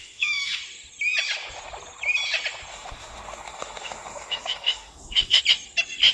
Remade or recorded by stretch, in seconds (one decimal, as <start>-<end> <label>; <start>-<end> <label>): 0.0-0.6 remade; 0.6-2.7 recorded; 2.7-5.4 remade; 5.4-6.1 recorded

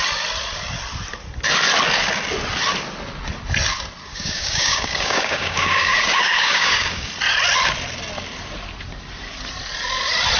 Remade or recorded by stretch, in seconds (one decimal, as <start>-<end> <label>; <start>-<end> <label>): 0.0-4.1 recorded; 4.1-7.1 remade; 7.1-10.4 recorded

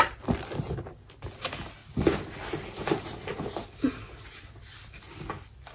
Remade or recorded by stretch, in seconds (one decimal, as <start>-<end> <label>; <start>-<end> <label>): 0.0-5.7 recorded

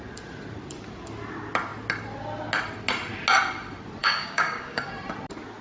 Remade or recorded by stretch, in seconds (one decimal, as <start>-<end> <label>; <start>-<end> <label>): 0.0-4.0 recorded; 4.0-4.9 remade; 4.9-5.6 recorded

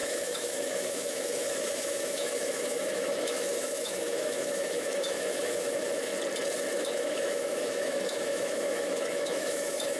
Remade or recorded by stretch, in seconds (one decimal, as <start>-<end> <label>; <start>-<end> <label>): 0.0-6.1 remade; 6.1-6.7 recorded; 6.7-10.0 remade

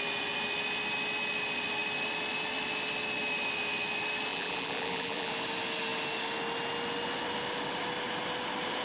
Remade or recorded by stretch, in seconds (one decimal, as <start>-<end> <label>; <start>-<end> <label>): 0.0-4.3 recorded; 4.3-5.3 remade; 5.3-8.8 recorded

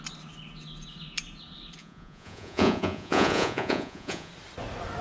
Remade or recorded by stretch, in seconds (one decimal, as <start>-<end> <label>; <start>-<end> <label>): 0.0-1.8 recorded; 1.8-4.3 remade; 4.3-5.0 recorded

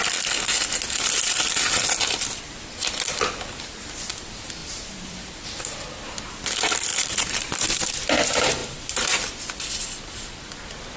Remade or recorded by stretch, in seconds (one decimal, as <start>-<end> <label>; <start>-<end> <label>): 0.0-4.6 recorded; 4.6-5.3 remade; 5.3-6.9 recorded; 6.9-7.8 remade; 7.8-8.6 recorded; 8.6-9.2 remade; 9.2-11.0 recorded